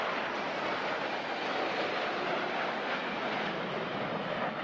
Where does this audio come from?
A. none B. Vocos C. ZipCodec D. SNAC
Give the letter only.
A